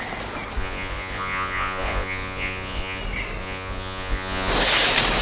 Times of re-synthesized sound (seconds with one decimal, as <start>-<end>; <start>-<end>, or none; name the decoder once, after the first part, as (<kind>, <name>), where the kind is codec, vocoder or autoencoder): 0.6-3.0 (vocoder, Vocos); 3.4-4.5

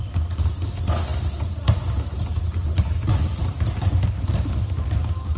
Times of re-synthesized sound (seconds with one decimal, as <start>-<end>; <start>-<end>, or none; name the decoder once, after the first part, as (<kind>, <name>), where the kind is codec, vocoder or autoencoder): none

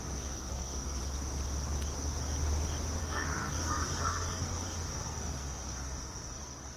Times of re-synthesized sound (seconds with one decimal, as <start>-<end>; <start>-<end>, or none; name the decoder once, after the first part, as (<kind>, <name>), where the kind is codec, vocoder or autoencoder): 0.0-1.0 (codec, SNAC); 3.0-6.8

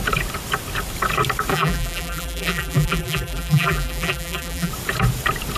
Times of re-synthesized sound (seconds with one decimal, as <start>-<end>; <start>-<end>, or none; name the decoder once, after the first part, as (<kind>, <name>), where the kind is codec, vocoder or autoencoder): 1.5-4.7 (vocoder, BigVGAN v2)

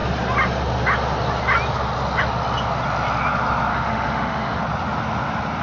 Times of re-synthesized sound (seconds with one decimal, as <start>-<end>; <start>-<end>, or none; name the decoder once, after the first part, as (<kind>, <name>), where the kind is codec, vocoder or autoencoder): 3.7-4.6 (autoencoder, DAC-VAE)